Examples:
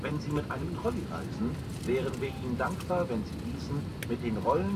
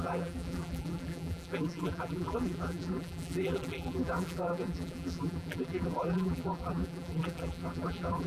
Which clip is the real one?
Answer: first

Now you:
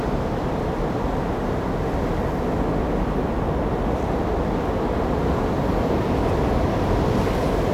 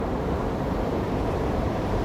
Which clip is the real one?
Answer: first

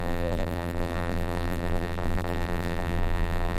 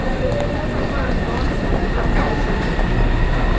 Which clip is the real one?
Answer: second